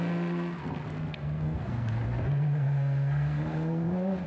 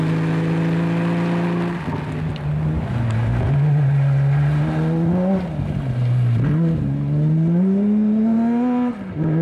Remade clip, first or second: first